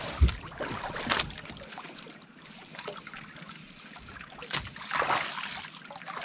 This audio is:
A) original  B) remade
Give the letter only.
A